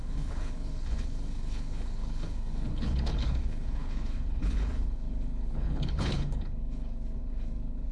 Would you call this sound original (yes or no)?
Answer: no